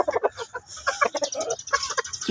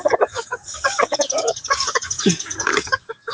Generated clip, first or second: second